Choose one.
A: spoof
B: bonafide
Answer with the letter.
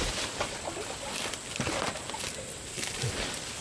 B